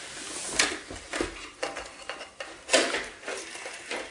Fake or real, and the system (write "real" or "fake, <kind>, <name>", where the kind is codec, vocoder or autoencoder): real